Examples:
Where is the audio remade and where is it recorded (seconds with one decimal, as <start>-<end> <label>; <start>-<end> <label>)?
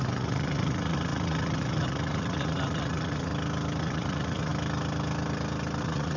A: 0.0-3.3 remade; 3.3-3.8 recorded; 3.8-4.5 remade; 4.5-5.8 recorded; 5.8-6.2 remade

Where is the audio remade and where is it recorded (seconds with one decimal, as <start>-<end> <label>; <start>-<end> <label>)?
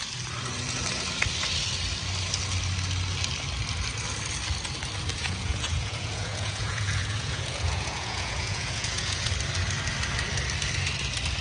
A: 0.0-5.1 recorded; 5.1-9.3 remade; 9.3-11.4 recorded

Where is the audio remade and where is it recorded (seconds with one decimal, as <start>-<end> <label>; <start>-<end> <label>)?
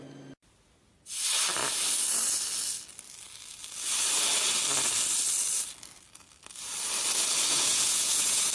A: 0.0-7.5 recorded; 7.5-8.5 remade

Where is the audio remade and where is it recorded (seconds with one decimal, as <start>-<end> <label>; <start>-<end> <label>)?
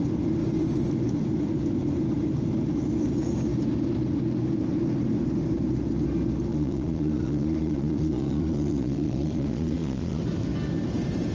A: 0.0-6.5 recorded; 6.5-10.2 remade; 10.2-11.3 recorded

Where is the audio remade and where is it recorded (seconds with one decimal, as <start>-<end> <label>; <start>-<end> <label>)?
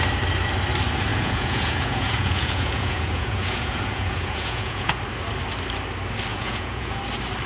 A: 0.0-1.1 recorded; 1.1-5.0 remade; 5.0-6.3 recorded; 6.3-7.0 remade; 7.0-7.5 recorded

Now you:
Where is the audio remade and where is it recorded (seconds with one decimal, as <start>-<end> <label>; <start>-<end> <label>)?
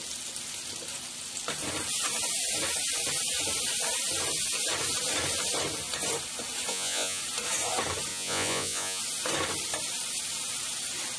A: 0.0-6.7 recorded; 6.7-7.2 remade; 7.2-8.1 recorded; 8.1-9.0 remade; 9.0-11.2 recorded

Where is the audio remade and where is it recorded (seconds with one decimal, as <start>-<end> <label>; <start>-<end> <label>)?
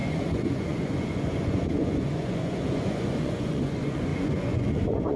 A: 0.0-5.2 remade